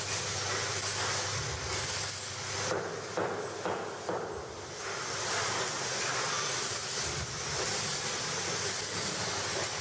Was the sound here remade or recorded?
recorded